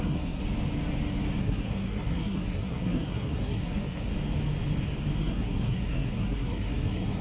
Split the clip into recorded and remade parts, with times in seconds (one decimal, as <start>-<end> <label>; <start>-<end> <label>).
0.0-0.4 remade; 0.4-1.4 recorded; 1.4-4.1 remade; 4.1-5.2 recorded; 5.2-7.2 remade